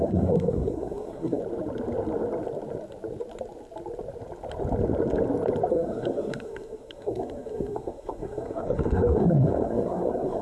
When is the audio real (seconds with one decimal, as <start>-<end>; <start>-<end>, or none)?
1.4-5.7